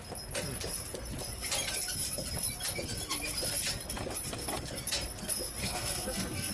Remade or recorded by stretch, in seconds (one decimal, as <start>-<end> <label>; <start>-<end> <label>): 0.0-5.6 recorded; 5.6-6.5 remade